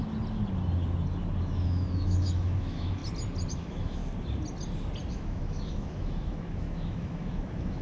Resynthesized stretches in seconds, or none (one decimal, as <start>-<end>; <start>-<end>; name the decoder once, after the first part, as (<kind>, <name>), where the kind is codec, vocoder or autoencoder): 1.4-3.0 (autoencoder, DAC-VAE); 3.5-4.0; 5.1-7.8